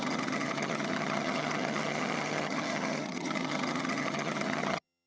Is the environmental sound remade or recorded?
remade